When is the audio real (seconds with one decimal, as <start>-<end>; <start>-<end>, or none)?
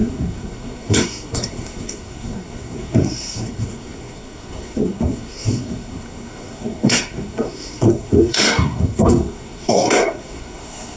none